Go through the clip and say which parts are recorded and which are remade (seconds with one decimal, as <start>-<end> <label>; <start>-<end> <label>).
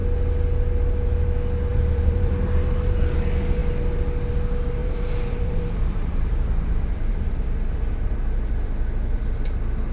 0.0-1.7 recorded; 1.7-3.0 remade; 3.0-4.8 recorded; 4.8-7.3 remade; 7.3-9.9 recorded